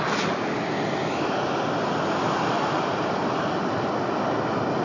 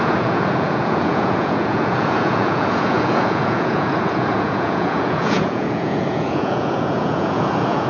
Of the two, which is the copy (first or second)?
second